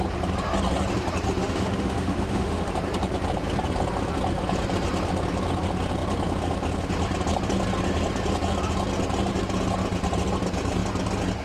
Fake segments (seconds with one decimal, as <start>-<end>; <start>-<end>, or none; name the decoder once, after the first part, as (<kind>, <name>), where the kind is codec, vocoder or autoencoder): 1.4-2.7 (autoencoder, DAC-VAE)